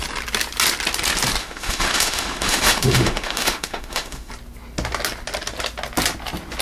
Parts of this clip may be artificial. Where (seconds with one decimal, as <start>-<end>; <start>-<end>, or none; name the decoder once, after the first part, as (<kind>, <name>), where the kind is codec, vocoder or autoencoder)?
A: 1.4-4.3 (autoencoder, DAC-VAE)